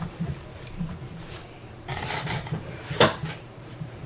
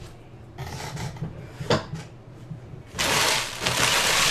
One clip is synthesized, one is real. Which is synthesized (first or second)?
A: first